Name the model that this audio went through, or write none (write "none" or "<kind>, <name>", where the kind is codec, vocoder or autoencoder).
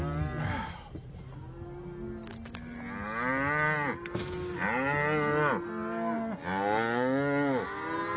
none